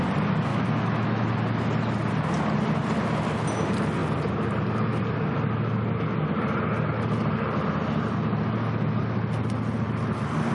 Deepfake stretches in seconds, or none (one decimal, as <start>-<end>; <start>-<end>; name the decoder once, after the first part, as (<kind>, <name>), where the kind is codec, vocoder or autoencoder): 0.5-1.3 (autoencoder, DAC-VAE)